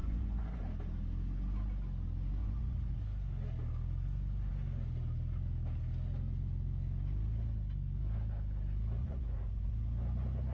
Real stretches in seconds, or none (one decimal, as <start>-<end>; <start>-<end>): 0.6-2.4; 3.0-9.0; 9.7-10.5